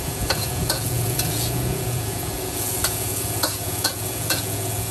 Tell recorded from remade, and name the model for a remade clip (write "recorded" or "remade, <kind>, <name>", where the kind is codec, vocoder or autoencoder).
remade, vocoder, Vocos